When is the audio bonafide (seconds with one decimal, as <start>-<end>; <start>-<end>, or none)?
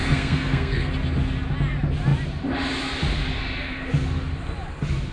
0.9-5.1